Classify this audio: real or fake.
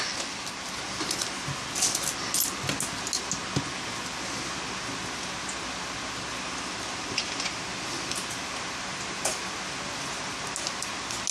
real